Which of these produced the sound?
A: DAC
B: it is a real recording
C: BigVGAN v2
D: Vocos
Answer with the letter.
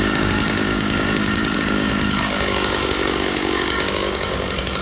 A